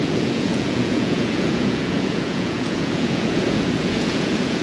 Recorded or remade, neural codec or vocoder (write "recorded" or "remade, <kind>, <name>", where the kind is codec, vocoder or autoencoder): remade, vocoder, Vocos